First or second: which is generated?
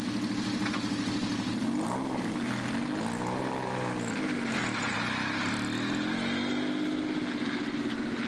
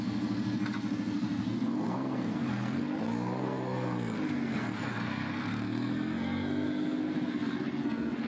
second